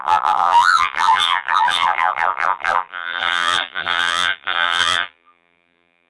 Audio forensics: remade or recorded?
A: remade